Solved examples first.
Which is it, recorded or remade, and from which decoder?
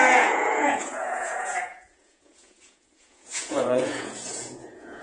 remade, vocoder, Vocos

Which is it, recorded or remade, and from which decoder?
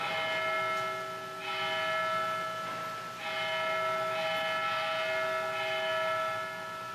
recorded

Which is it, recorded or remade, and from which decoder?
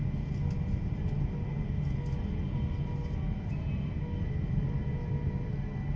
recorded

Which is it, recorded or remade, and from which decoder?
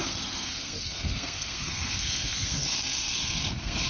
remade, codec, SNAC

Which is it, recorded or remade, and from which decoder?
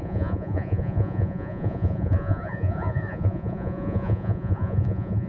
remade, vocoder, Vocos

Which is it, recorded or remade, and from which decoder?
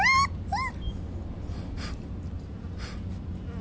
recorded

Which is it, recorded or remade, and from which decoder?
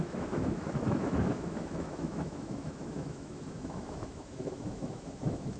remade, autoencoder, DAC-VAE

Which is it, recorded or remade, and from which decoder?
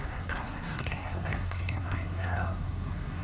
remade, codec, SNAC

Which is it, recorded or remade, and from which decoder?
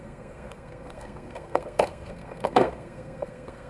remade, codec, SNAC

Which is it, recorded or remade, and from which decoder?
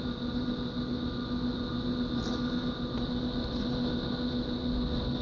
recorded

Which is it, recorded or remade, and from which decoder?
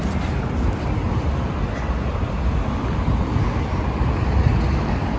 recorded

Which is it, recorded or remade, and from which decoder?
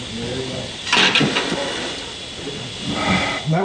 recorded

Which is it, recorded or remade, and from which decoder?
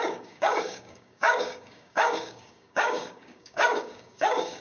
remade, codec, DAC